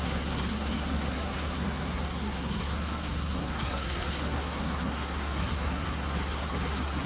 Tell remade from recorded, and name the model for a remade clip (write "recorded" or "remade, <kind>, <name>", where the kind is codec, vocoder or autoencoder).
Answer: remade, codec, SNAC